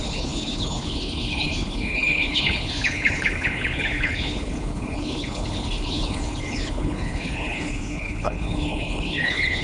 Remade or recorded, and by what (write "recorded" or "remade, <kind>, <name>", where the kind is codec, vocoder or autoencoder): remade, codec, HILCodec